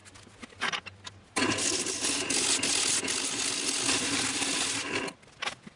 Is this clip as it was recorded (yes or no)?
yes